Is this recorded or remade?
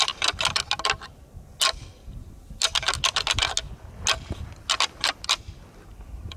recorded